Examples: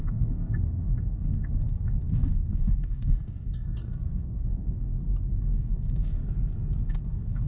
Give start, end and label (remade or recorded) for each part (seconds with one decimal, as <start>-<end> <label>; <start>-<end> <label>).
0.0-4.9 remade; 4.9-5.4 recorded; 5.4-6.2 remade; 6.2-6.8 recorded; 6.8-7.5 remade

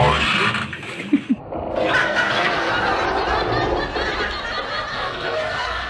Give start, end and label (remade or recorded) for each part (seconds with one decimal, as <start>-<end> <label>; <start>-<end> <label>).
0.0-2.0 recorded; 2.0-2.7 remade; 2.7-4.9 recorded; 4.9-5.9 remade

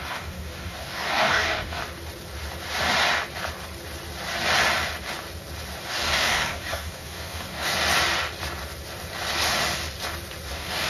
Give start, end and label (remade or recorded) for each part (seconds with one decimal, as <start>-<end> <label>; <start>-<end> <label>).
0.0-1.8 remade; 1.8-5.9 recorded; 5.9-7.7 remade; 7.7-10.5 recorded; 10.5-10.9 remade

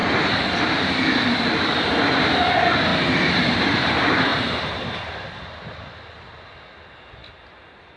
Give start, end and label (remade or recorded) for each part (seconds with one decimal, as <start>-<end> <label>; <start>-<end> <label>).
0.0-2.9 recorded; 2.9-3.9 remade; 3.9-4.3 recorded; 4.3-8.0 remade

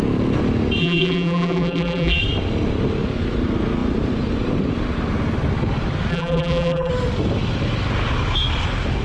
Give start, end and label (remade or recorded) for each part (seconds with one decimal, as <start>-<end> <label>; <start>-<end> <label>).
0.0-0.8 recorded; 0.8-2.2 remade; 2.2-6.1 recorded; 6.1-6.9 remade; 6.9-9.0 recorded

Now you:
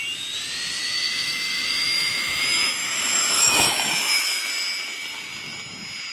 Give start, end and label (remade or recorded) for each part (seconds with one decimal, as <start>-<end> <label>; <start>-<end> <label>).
0.0-0.8 recorded; 0.8-4.5 remade; 4.5-6.1 recorded

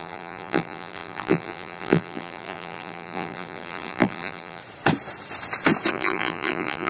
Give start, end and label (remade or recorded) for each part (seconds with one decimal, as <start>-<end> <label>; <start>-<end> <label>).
0.0-4.6 remade; 4.6-5.9 recorded; 5.9-6.9 remade

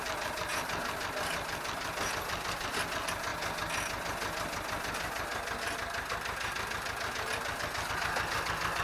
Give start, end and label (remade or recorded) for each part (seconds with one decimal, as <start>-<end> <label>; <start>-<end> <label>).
0.0-0.5 recorded; 0.5-2.8 remade; 2.8-8.8 recorded